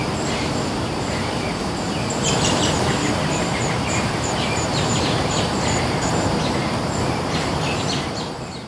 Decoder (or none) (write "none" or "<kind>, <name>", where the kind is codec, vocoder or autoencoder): vocoder, BigVGAN v2